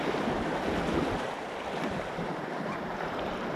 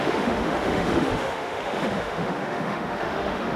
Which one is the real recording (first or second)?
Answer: first